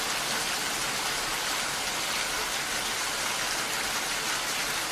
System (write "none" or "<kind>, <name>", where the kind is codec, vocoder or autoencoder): none